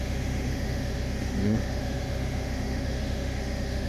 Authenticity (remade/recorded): remade